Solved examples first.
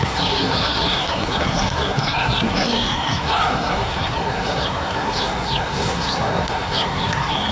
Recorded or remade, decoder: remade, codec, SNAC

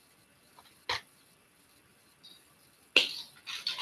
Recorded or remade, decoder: recorded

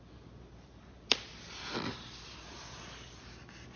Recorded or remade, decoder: recorded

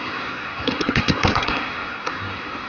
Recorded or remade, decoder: remade, codec, SNAC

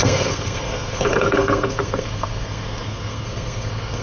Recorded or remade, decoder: remade, codec, SNAC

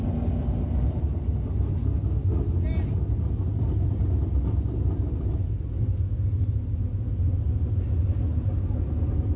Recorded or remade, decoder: recorded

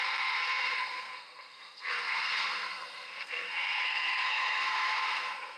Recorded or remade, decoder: remade, codec, SNAC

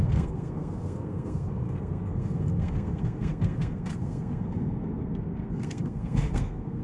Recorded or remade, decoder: remade, codec, SNAC